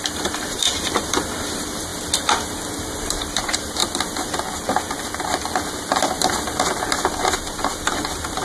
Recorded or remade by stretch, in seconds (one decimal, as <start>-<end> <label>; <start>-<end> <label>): 0.0-1.9 remade; 1.9-2.7 recorded; 2.7-3.8 remade; 3.8-7.2 recorded; 7.2-8.4 remade